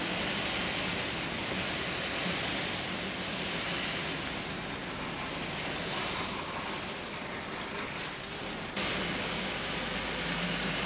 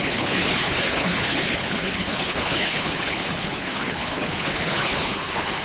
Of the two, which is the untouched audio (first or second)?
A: first